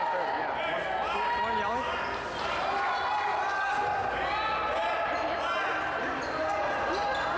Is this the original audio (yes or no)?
yes